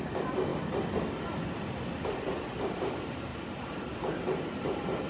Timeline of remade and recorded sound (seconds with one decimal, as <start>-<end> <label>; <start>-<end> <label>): 0.0-5.1 recorded